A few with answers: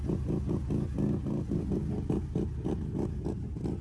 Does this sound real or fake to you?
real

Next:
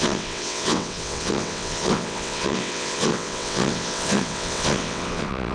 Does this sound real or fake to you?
fake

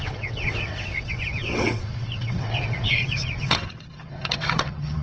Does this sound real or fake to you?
fake